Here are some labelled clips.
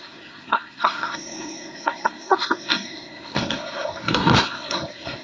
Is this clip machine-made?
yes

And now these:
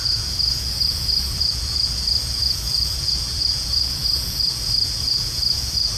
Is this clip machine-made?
yes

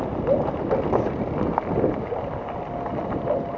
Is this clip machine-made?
no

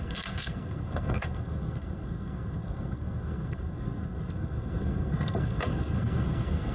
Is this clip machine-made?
yes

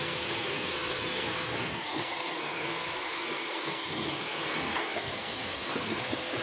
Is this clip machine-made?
yes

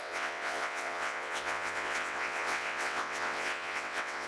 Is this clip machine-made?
yes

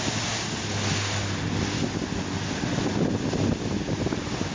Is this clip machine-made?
no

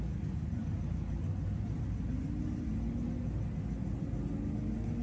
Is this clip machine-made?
no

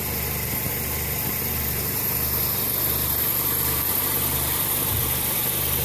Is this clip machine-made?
no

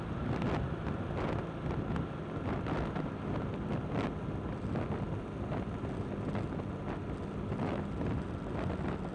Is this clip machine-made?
no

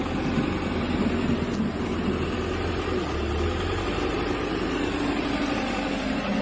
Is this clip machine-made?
no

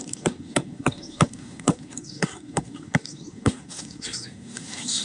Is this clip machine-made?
yes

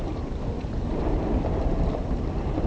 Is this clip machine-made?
no